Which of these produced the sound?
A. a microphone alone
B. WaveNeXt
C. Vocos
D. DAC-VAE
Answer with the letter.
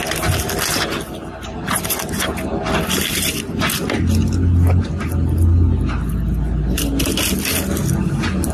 A